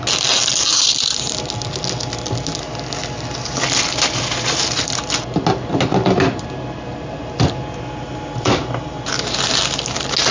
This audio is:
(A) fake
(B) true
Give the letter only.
B